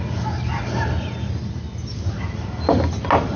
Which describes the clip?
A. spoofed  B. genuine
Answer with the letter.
B